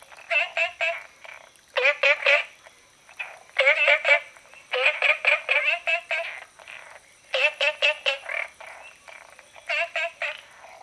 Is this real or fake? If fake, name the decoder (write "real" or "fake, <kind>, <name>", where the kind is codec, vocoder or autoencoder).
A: real